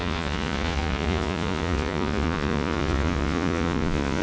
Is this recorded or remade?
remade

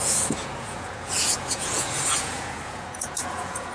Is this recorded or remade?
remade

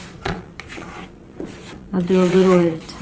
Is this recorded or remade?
remade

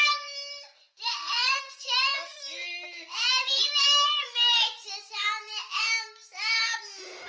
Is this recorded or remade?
remade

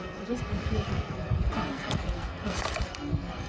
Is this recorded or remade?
remade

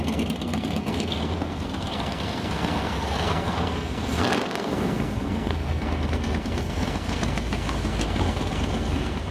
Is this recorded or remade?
remade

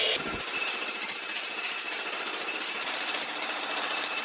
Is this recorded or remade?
remade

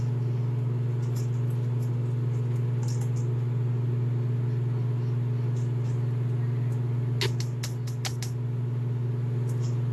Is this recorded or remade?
recorded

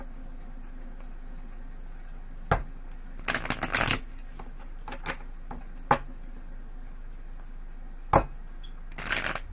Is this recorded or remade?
recorded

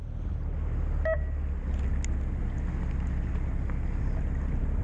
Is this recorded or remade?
recorded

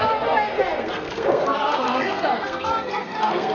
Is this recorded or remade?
remade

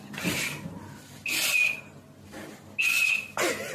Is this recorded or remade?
recorded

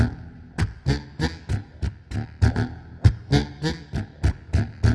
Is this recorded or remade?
recorded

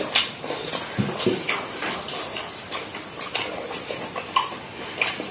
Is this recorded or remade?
recorded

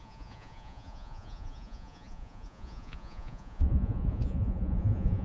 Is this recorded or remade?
remade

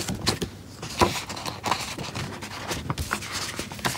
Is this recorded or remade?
recorded